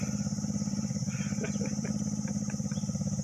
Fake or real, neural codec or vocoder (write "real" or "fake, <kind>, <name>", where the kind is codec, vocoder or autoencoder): fake, vocoder, BigVGAN v2